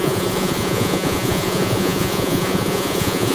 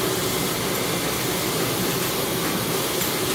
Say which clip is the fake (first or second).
first